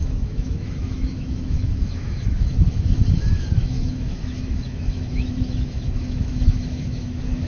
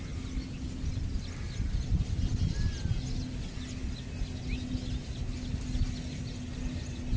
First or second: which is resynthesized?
first